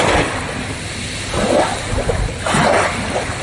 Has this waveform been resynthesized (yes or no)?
no